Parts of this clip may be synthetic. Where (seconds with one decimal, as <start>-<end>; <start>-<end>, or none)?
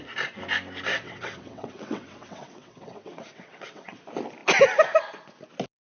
0.9-4.0